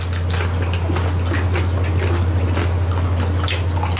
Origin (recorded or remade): recorded